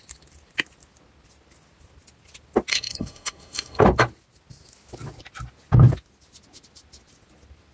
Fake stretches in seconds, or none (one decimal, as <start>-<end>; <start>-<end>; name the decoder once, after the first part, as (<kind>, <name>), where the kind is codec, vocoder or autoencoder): 2.7-3.8 (codec, SNAC)